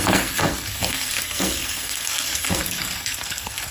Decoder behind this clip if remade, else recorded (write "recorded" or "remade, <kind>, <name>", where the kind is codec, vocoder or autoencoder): remade, codec, SNAC